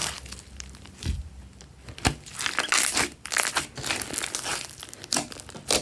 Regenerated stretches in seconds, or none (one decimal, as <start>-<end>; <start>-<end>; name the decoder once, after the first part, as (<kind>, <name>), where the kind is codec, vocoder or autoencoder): none